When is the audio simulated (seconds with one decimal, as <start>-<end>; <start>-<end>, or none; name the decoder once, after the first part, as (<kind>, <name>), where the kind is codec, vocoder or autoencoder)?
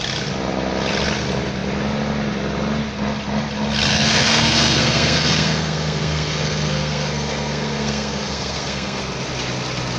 3.9-9.0 (codec, SNAC)